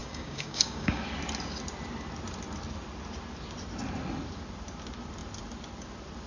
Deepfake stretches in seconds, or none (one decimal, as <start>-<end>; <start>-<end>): 0.0-1.0